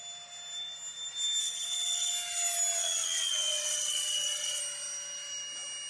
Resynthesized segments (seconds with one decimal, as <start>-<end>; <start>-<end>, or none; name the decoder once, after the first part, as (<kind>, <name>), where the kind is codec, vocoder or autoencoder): 1.4-2.1 (vocoder, WaveNeXt); 2.8-4.6